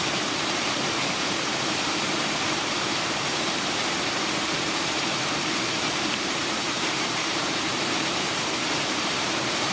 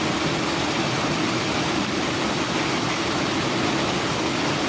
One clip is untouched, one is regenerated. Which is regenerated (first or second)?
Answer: first